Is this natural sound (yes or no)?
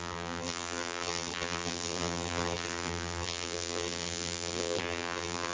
no